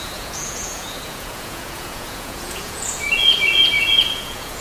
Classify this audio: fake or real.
fake